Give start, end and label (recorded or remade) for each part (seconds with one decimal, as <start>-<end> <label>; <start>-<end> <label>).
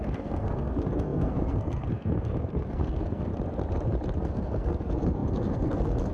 0.0-3.3 remade; 3.3-4.2 recorded; 4.2-6.1 remade